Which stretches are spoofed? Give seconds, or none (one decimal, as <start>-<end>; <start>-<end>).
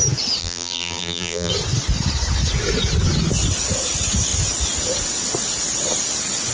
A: 0.4-1.5